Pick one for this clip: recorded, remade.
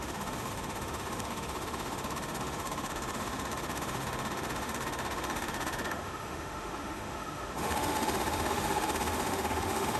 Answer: remade